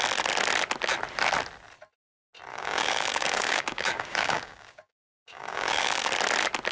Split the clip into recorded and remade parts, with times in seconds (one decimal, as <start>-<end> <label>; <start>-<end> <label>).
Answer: 0.0-2.5 recorded; 2.5-6.1 remade; 6.1-6.7 recorded